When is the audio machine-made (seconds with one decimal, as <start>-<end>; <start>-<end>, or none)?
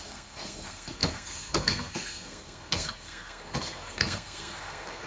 0.0-5.1